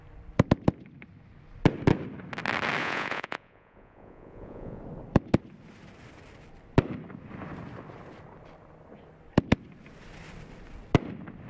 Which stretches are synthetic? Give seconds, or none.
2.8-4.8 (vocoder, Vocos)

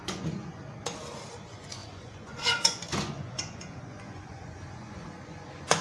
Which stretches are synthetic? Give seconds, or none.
0.0-0.6 (vocoder, Vocos); 1.3-5.8

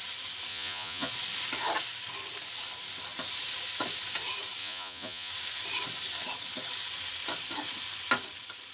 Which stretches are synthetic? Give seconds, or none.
0.5-1.1 (vocoder, Vocos); 4.6-5.3

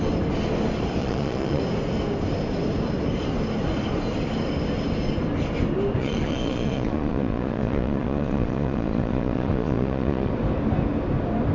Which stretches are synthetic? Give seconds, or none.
1.0-1.6 (vocoder, Vocos); 6.0-10.3